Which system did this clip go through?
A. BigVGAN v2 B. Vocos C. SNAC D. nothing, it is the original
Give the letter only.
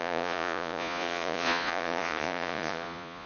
B